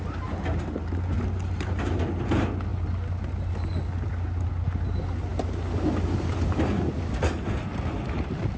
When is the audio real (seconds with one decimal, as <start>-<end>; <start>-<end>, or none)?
0.0-8.6